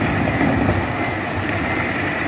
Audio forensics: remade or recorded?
recorded